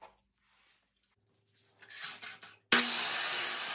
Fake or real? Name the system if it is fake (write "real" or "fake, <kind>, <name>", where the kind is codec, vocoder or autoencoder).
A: real